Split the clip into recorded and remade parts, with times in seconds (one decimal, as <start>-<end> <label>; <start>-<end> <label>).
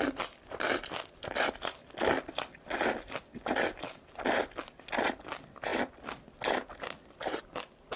0.0-8.0 recorded